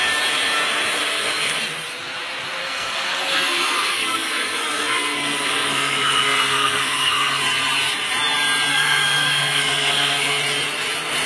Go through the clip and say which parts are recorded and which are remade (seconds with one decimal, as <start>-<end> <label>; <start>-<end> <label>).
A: 0.0-1.0 recorded; 1.0-1.6 remade; 1.6-2.6 recorded; 2.6-7.4 remade; 7.4-8.7 recorded; 8.7-10.4 remade; 10.4-11.3 recorded